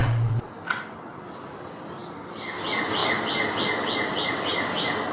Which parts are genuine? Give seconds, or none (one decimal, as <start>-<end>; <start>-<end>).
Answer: 0.5-5.1